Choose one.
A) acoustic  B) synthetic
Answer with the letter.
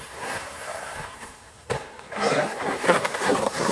B